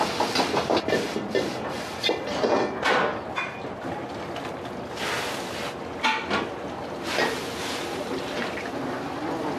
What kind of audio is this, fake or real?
real